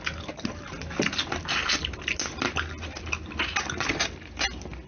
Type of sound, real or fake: real